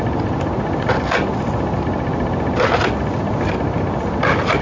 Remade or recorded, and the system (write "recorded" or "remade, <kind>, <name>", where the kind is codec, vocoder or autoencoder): recorded